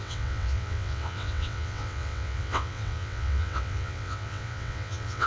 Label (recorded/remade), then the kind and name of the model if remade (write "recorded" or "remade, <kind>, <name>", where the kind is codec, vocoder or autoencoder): remade, vocoder, WaveNeXt